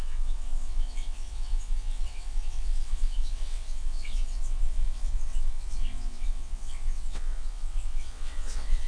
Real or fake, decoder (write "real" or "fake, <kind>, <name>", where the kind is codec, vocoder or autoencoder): fake, vocoder, WaveNeXt